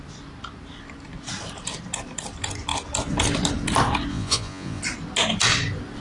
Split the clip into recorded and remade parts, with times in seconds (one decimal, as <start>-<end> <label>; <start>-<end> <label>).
0.0-4.1 recorded; 4.1-4.8 remade; 4.8-6.0 recorded